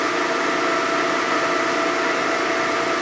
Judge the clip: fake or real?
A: real